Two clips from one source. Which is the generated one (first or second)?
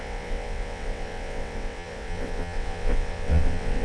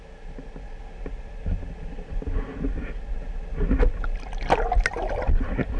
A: first